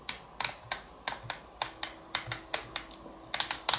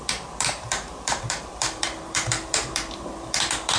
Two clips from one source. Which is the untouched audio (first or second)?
first